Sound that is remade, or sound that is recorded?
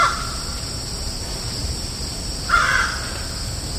recorded